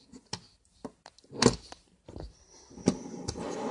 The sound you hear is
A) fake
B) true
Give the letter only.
A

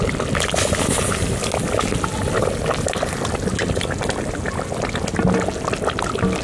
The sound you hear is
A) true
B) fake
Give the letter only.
A